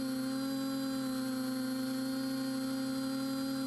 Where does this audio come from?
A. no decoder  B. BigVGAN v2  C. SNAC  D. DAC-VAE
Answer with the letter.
A